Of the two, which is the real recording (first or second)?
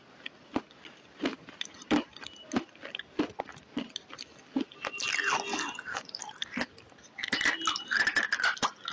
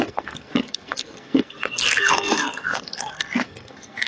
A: first